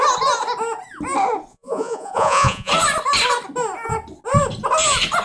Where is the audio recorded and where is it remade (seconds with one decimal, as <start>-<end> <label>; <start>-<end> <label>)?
0.0-1.5 recorded; 1.5-2.7 remade; 2.7-5.2 recorded